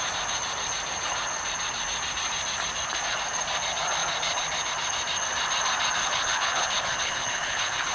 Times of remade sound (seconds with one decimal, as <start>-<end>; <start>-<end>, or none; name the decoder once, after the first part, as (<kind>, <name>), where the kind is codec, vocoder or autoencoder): 6.0-7.9 (codec, HILCodec)